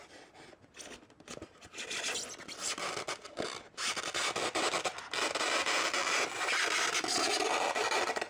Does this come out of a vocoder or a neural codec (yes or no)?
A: no